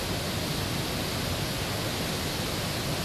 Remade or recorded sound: recorded